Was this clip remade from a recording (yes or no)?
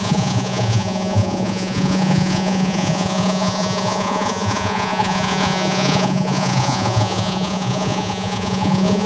yes